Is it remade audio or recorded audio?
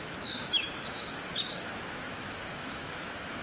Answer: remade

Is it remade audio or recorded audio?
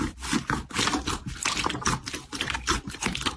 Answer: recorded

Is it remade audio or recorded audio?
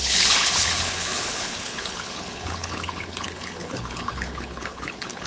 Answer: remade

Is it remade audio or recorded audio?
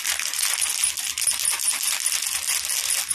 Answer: recorded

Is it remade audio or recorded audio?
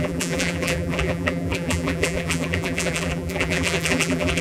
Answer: remade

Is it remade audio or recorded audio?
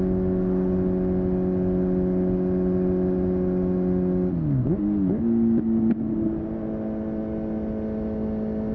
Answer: recorded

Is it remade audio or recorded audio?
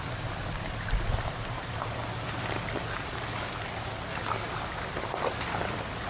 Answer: recorded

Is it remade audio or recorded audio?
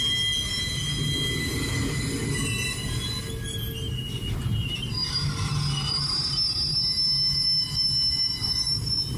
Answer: recorded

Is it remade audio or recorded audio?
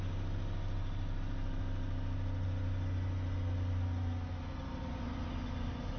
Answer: recorded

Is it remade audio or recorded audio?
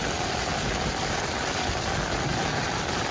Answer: recorded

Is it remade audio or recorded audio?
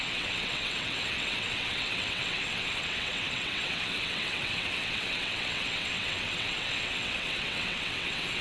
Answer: remade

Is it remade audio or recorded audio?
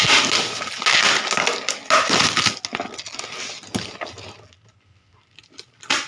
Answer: recorded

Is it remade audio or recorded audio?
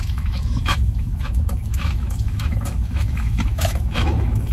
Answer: remade